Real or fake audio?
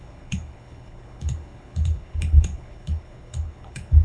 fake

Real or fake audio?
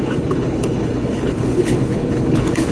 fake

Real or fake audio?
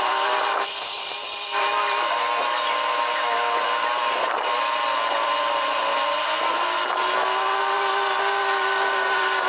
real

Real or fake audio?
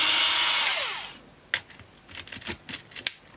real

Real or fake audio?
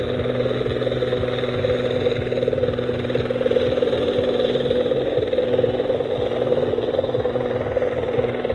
real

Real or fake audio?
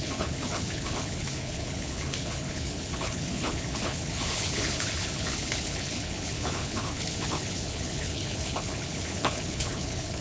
fake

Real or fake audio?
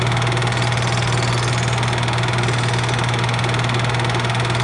real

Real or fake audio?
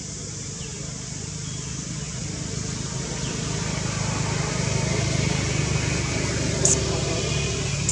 real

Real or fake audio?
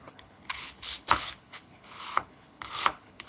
fake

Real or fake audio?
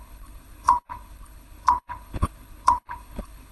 fake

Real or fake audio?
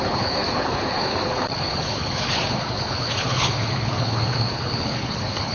fake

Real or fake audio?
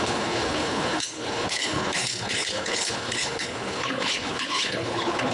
fake